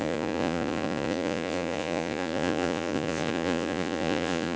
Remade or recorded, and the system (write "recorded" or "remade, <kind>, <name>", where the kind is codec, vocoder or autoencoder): remade, vocoder, Vocos